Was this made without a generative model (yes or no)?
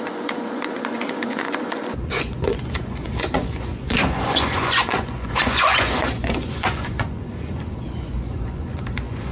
no